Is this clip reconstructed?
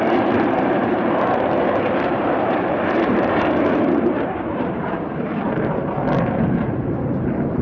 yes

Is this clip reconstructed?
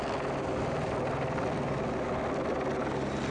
no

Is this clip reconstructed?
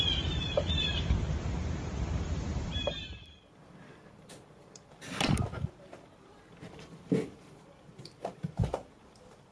yes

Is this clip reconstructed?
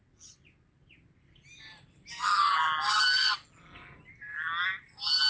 no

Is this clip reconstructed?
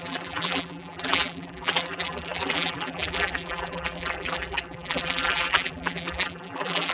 yes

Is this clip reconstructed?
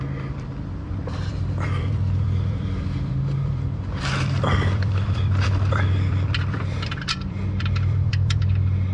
yes